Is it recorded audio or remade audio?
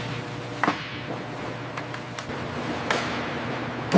recorded